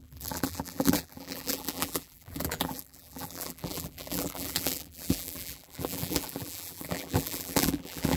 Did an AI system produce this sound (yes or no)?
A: yes